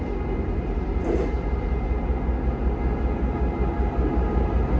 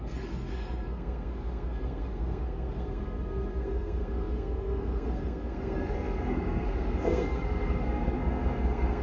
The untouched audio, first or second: first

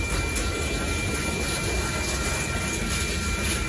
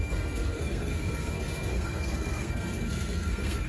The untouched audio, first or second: first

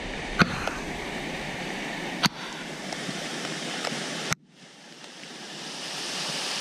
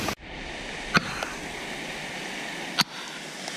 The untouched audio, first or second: second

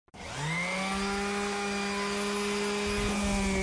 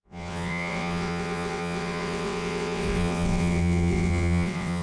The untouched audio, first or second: first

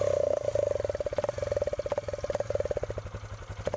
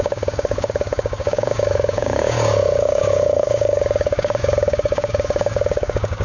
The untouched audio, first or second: first